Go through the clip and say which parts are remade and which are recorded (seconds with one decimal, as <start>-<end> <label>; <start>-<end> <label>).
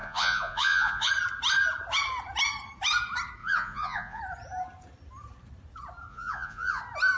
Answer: 0.0-1.1 remade; 1.1-3.4 recorded; 3.4-4.2 remade; 4.2-6.1 recorded; 6.1-6.8 remade; 6.8-7.2 recorded